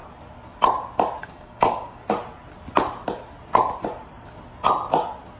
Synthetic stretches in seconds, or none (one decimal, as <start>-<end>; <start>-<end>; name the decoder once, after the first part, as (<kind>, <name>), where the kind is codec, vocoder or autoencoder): 1.2-2.0 (codec, DAC)